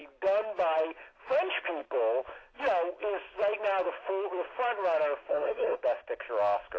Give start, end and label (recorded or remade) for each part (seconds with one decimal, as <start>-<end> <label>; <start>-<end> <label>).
0.0-5.3 recorded; 5.3-5.8 remade; 5.8-6.8 recorded